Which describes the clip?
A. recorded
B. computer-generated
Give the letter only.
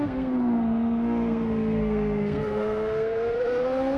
B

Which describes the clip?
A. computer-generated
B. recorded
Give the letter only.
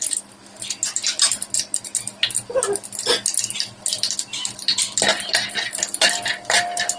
B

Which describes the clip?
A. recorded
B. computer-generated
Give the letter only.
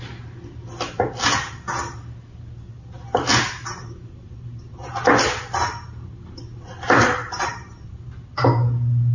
A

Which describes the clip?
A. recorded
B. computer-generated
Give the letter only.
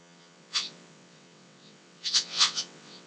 B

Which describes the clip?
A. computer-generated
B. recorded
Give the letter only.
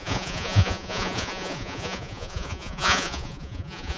A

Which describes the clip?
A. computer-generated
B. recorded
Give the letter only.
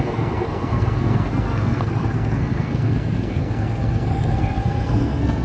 A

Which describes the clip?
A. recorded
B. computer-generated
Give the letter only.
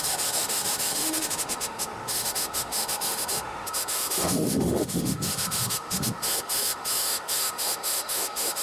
B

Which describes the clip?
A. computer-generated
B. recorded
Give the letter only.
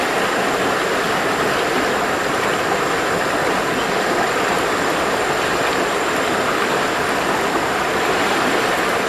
B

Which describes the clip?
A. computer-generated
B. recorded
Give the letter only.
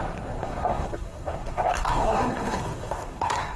A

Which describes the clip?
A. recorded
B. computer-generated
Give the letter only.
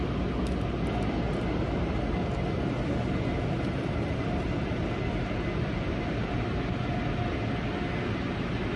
A